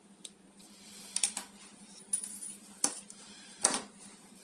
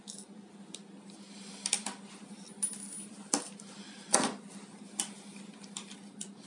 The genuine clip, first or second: second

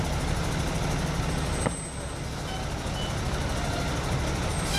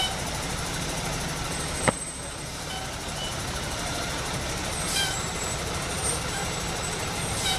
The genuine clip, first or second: first